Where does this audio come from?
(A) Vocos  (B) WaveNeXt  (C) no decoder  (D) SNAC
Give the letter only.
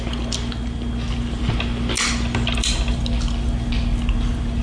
C